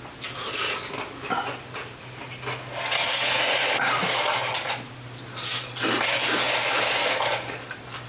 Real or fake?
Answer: real